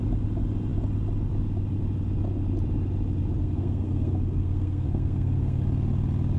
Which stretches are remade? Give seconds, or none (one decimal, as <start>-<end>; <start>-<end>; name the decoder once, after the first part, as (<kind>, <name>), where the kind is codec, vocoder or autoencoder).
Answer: 3.4-5.6 (codec, SNAC)